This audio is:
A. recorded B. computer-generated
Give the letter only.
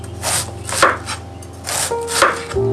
A